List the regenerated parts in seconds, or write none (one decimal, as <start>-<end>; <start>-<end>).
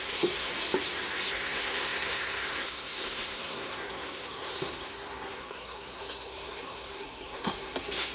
0.0-0.5; 1.3-8.1